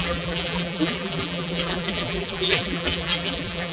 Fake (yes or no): yes